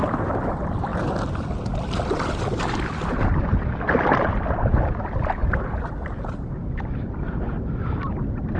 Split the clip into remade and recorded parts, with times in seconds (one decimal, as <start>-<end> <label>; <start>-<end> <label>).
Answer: 0.0-8.6 recorded